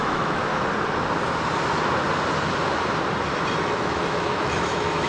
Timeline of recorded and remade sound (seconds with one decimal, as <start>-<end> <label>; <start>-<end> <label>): 0.0-0.5 remade; 0.5-3.6 recorded; 3.6-5.1 remade